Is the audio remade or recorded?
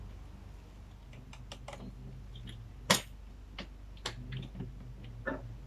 recorded